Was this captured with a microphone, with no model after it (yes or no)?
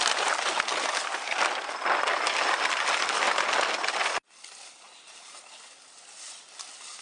yes